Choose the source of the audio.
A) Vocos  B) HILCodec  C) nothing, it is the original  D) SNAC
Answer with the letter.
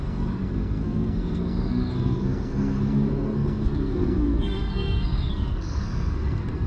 D